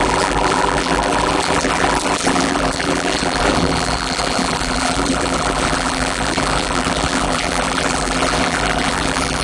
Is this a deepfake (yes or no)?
yes